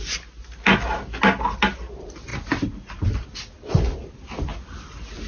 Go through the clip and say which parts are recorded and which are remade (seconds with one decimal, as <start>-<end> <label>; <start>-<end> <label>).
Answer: 0.0-5.3 recorded